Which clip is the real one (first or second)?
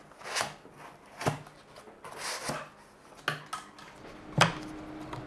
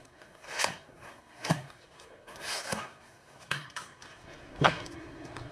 first